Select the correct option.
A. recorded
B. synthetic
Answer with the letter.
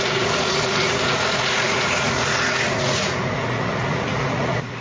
B